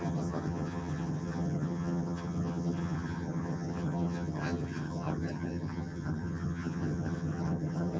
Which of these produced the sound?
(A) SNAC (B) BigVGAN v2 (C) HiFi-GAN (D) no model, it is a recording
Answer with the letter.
C